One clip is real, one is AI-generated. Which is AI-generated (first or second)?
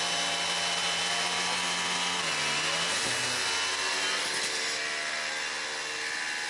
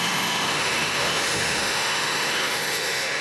second